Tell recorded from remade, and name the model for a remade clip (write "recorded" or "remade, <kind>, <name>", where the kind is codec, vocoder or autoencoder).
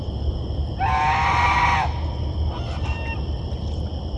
recorded